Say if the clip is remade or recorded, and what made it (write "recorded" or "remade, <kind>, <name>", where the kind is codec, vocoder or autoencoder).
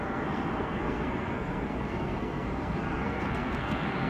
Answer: remade, codec, SNAC